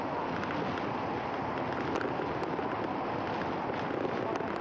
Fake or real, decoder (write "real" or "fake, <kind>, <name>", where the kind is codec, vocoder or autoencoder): real